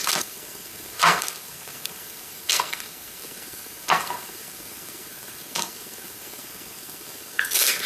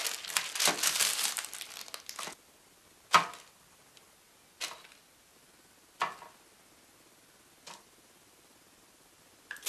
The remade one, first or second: first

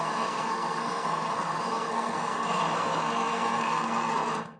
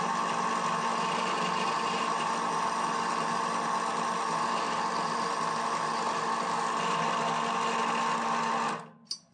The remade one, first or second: first